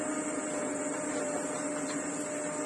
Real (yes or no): yes